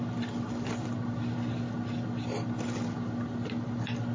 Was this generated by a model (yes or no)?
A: no